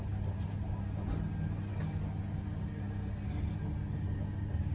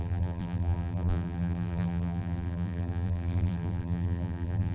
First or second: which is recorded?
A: first